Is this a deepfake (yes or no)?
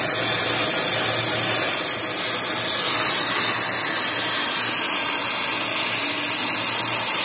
no